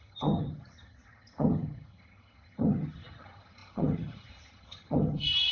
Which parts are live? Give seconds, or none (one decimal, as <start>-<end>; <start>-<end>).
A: none